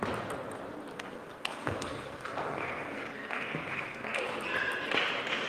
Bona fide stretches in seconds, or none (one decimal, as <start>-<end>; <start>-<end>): 0.0-0.9; 4.2-5.5